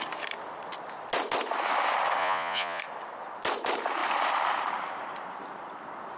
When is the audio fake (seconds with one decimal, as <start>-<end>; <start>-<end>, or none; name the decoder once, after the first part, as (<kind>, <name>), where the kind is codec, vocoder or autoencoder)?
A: 2.2-2.8 (vocoder, Vocos)